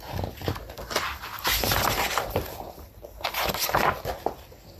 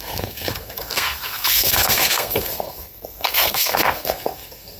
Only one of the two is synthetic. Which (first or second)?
second